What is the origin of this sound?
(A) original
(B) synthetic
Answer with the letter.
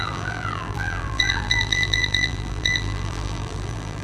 B